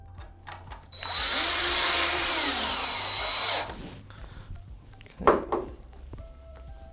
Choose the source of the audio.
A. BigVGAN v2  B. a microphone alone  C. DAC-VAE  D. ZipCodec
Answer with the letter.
A